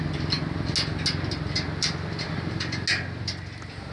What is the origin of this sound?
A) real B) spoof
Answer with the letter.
A